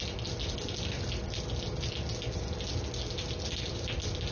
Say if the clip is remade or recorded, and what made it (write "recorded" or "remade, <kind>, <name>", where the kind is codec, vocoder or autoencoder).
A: recorded